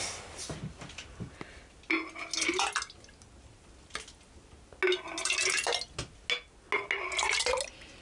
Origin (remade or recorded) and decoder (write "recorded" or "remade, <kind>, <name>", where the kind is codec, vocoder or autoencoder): recorded